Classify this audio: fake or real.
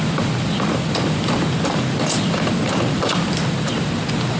fake